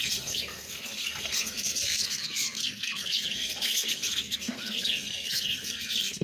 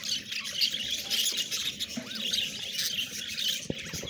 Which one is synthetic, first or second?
first